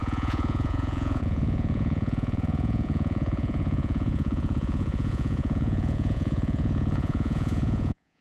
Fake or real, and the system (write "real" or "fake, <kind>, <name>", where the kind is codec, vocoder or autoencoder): fake, vocoder, Vocos